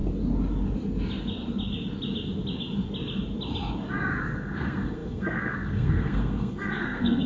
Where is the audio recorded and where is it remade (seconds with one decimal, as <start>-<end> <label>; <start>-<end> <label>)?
0.0-4.2 recorded; 4.2-7.3 remade